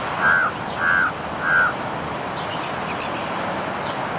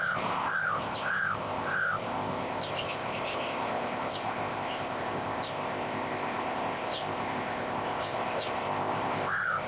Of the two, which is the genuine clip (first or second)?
first